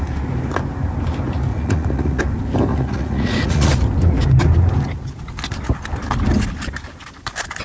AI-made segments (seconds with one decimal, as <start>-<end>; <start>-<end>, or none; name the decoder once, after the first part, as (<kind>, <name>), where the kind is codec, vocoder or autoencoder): 1.5-2.2 (vocoder, Vocos); 2.7-3.7